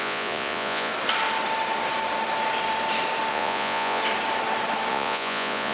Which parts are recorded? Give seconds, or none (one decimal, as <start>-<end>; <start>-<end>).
0.9-3.3; 4.0-4.9